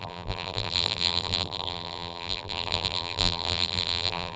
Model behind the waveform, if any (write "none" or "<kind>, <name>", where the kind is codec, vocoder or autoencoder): vocoder, BigVGAN v2